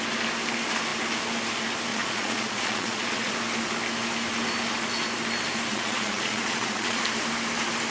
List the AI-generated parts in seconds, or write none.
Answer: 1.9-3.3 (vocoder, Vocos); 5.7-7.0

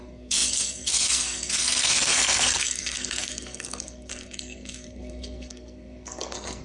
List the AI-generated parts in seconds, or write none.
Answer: 0.0-6.6 (codec, SNAC)

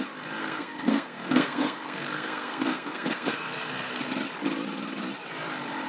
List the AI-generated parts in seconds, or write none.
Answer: 0.4-3.9 (codec, SNAC)

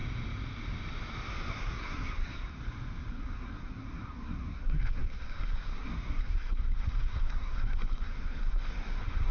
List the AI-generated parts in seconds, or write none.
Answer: 1.5-2.6 (codec, SNAC); 3.1-9.3